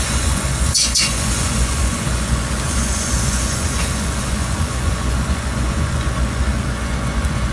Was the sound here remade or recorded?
remade